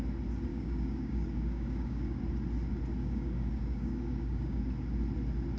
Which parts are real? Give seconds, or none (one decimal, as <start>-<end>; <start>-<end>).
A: 0.0-0.5; 2.2-3.0; 4.6-5.6